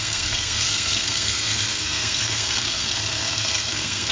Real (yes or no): no